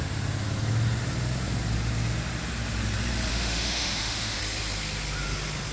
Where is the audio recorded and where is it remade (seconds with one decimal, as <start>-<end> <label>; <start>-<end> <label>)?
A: 0.0-3.3 recorded; 3.3-4.4 remade; 4.4-5.7 recorded